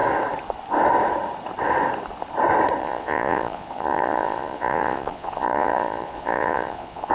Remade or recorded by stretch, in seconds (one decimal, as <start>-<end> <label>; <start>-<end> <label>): 0.0-2.8 recorded; 2.8-7.1 remade